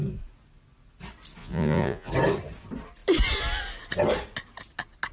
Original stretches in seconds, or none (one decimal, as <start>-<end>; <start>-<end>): 0.0-1.4; 2.1-5.1